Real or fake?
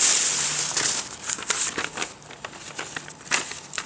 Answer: real